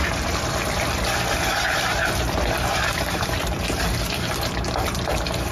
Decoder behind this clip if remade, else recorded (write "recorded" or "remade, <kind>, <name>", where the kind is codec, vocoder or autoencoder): remade, vocoder, BigVGAN v2